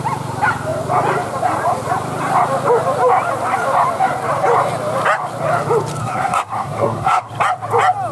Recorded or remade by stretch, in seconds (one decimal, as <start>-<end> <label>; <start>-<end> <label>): 0.0-6.0 recorded; 6.0-7.3 remade; 7.3-8.1 recorded